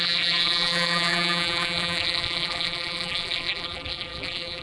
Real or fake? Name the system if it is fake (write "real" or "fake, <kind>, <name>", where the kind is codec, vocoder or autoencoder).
fake, vocoder, BigVGAN v2